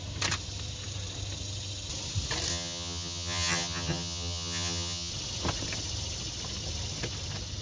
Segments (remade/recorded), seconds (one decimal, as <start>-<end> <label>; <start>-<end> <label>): 0.0-2.5 recorded; 2.5-5.1 remade; 5.1-7.6 recorded